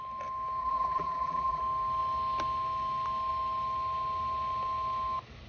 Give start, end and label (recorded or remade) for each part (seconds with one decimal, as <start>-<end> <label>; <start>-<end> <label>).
0.0-0.6 recorded; 0.6-1.6 remade; 1.6-5.5 recorded